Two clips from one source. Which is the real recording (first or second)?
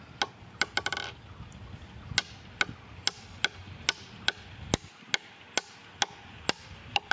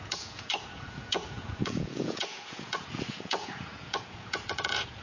first